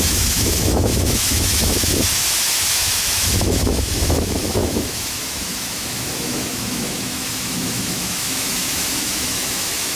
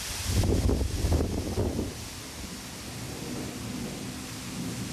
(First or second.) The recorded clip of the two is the second